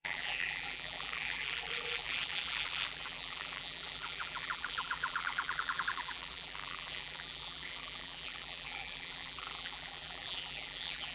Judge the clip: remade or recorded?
remade